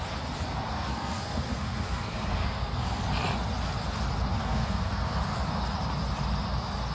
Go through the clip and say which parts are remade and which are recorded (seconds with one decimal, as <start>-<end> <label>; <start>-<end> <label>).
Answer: 0.0-0.7 recorded; 0.7-3.0 remade; 3.0-4.3 recorded; 4.3-5.2 remade; 5.2-6.9 recorded